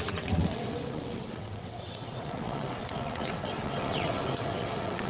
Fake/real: fake